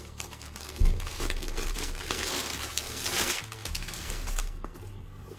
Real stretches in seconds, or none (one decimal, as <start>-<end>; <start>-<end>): none